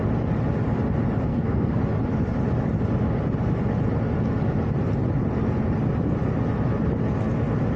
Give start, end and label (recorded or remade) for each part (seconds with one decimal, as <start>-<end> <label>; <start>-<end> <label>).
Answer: 0.0-1.3 recorded; 1.3-1.8 remade; 1.8-7.8 recorded